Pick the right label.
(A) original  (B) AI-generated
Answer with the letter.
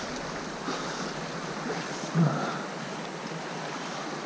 A